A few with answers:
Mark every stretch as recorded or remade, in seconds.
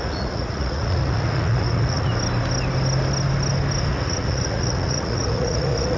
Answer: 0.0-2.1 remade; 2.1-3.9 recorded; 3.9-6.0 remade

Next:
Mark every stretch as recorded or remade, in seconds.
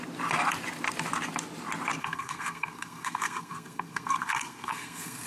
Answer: 0.0-2.0 recorded; 2.0-5.3 remade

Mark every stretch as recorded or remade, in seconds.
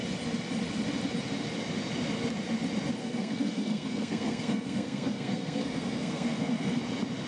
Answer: 0.0-3.0 recorded; 3.0-6.8 remade; 6.8-7.3 recorded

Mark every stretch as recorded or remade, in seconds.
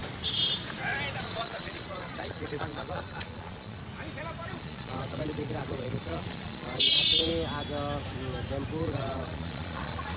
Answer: 0.0-1.2 recorded; 1.2-3.8 remade; 3.8-4.5 recorded; 4.5-7.3 remade; 7.3-8.8 recorded; 8.8-10.2 remade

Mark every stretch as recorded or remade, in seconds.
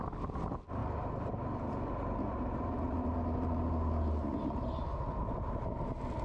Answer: 0.0-6.2 recorded